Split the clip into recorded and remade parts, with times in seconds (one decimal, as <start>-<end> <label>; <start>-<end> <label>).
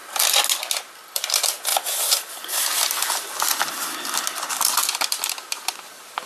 0.0-1.7 recorded; 1.7-5.5 remade; 5.5-6.3 recorded